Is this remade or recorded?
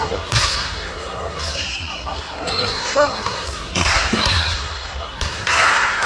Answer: remade